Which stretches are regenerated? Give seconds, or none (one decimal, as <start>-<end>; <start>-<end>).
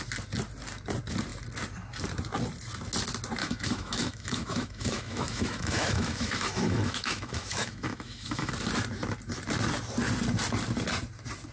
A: 3.4-8.5